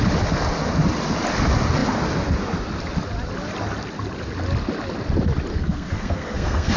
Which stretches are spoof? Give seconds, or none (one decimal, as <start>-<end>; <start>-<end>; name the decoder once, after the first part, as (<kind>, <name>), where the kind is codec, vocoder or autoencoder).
5.5-6.8 (codec, SNAC)